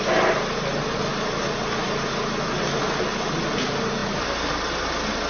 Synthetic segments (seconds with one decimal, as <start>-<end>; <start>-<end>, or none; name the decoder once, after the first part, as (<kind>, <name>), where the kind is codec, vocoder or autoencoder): none